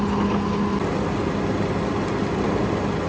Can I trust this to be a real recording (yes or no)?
yes